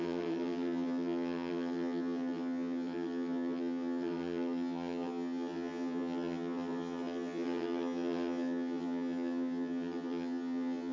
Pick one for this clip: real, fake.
fake